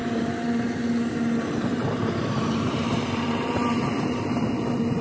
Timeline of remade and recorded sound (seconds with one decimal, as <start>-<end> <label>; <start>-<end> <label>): 0.0-0.6 remade; 0.6-1.7 recorded; 1.7-5.0 remade